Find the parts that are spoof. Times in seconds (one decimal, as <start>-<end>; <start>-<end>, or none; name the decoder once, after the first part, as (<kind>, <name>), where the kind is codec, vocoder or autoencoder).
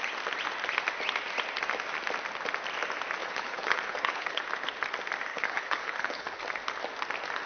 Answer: 3.2-4.4 (codec, HILCodec); 5.3-6.4